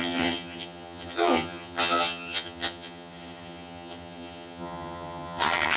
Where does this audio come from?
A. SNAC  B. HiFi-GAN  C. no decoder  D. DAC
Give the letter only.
B